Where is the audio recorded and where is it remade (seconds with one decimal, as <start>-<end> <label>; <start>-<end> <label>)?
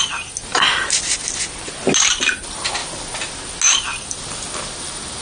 0.0-5.2 recorded